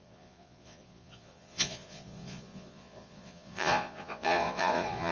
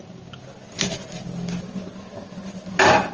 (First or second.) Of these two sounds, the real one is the second